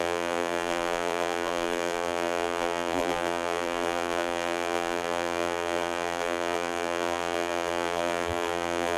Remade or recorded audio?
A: remade